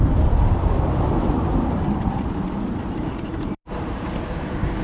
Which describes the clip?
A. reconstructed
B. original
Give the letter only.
A